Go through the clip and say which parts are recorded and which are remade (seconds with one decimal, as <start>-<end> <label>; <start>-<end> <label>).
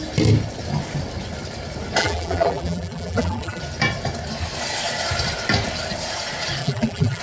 0.0-2.0 recorded; 2.0-3.6 remade; 3.6-6.6 recorded; 6.6-7.2 remade